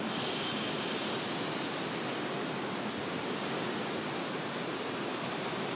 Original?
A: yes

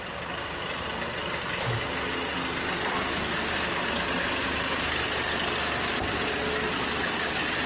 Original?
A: yes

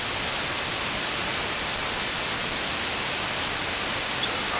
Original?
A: yes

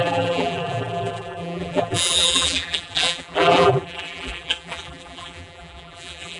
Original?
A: no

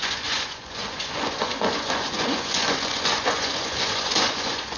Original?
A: no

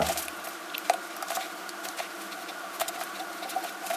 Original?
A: yes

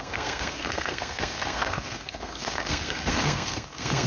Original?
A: no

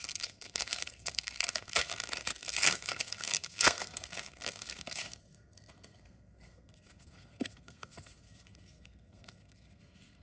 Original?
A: no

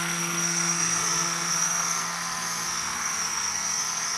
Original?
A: no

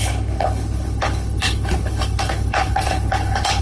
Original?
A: no